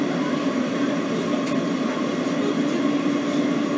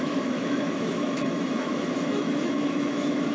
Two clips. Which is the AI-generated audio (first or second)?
second